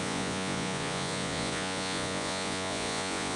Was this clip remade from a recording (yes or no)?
yes